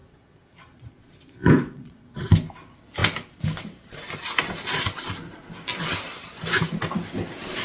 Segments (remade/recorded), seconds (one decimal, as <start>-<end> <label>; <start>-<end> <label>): 0.0-2.3 remade; 2.3-7.6 recorded